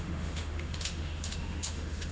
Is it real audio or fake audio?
fake